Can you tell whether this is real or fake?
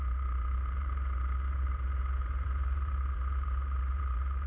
fake